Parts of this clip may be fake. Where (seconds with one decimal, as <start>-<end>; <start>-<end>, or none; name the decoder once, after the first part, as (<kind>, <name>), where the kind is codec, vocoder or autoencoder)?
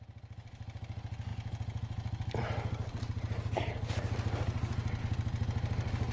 none